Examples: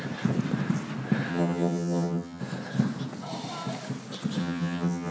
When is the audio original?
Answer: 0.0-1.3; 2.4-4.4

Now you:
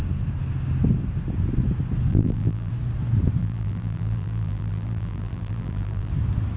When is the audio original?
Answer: 0.0-2.1; 2.7-3.4; 6.1-6.6